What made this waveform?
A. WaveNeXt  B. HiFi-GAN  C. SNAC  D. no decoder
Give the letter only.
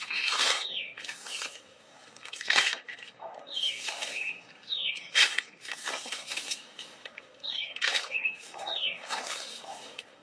C